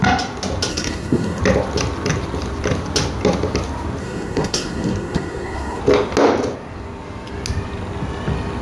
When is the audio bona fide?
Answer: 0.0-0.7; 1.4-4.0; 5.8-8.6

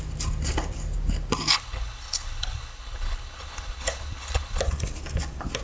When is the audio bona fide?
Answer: 0.0-1.5; 4.6-5.6

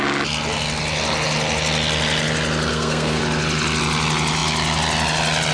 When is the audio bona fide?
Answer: 0.0-2.7; 3.2-5.5